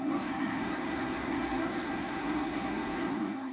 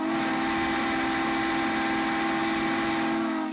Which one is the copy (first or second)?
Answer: first